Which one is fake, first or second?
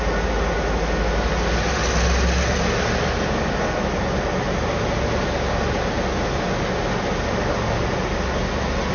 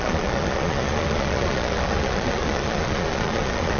second